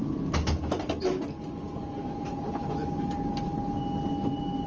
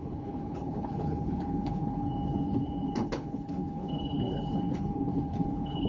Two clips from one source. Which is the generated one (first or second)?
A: second